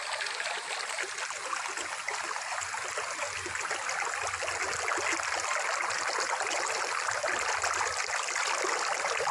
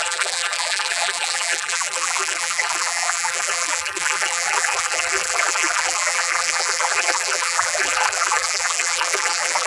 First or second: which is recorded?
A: first